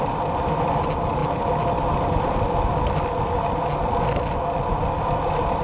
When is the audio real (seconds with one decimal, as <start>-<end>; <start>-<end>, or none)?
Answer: 0.0-5.6